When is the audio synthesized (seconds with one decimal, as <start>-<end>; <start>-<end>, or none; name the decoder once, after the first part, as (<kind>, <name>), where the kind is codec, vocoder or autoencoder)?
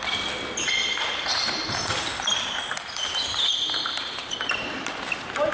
1.3-2.1 (vocoder, BigVGAN v2); 3.9-5.5